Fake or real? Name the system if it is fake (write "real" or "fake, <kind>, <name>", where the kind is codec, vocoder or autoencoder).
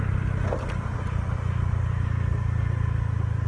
real